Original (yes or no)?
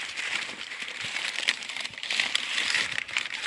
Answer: no